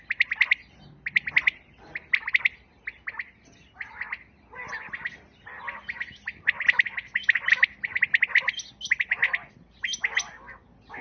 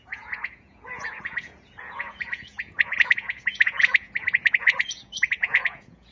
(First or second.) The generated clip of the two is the second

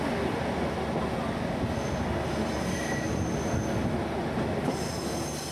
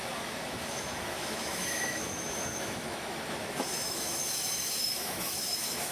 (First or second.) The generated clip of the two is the second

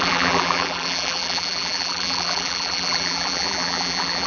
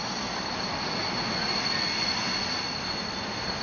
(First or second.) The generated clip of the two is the first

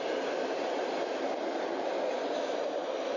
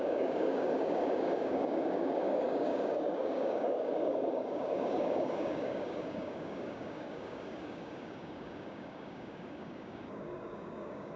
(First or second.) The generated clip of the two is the second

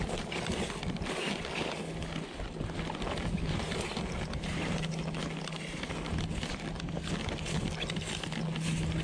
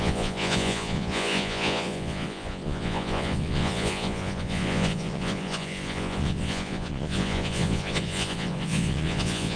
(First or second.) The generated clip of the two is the second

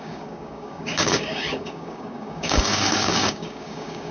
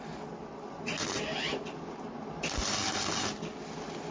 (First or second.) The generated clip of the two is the first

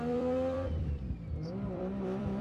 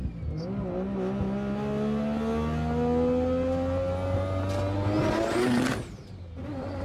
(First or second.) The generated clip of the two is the first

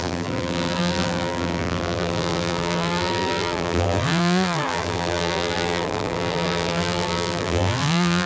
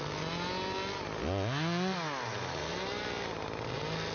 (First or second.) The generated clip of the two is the first